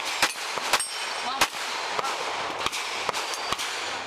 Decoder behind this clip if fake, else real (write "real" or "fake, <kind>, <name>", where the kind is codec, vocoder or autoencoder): real